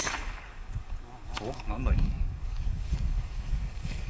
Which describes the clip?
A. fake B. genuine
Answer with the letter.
A